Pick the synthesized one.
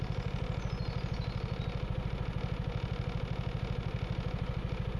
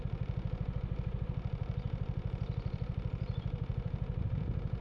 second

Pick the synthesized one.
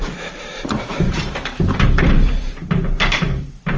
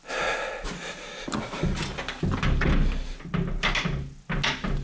first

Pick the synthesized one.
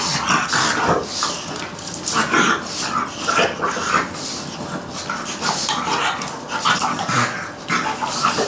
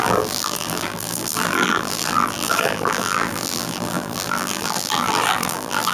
second